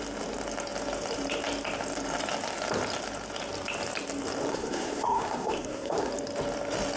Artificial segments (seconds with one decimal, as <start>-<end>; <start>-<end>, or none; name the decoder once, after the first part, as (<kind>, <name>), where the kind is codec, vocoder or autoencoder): 4.5-6.1 (codec, SNAC)